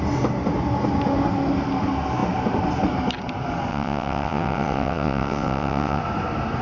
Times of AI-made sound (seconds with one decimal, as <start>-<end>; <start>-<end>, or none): 3.7-6.0